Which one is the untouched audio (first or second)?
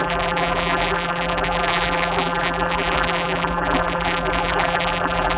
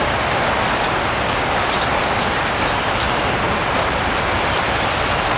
second